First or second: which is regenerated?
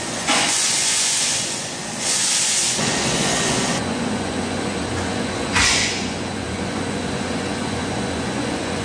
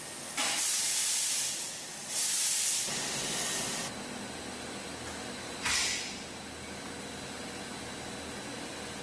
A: first